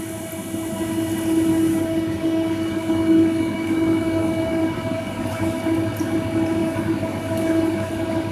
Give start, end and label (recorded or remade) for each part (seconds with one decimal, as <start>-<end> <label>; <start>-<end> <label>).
0.0-1.5 recorded; 1.5-5.6 remade; 5.6-6.6 recorded; 6.6-7.9 remade; 7.9-8.3 recorded